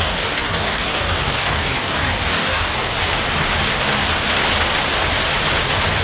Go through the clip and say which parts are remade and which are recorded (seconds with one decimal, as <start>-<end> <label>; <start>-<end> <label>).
0.0-2.9 remade; 2.9-6.0 recorded